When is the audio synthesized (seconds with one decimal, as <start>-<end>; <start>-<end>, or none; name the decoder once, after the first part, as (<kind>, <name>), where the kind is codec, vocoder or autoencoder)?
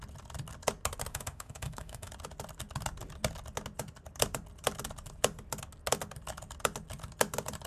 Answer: 1.1-2.1 (autoencoder, DAC-VAE)